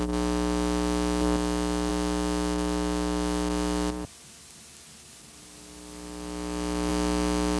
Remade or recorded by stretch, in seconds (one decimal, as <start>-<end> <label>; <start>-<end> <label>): 0.0-7.6 recorded